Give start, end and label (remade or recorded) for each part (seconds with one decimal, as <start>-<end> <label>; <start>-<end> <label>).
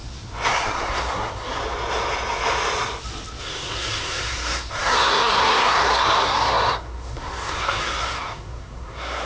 0.0-0.5 recorded; 0.5-1.6 remade; 1.6-3.4 recorded; 3.4-9.3 remade